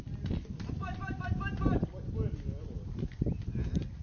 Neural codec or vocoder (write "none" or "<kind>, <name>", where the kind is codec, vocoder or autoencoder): none